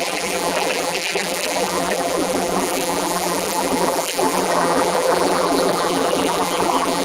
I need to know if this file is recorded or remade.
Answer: remade